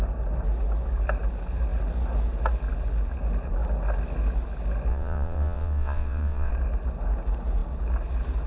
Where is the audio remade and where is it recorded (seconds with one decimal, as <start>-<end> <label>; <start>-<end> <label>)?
0.0-4.9 recorded; 4.9-6.5 remade; 6.5-8.5 recorded